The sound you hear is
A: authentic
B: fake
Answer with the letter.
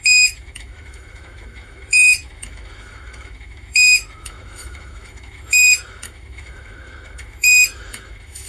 B